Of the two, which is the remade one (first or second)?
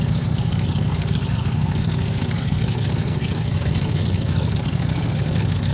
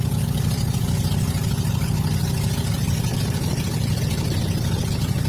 first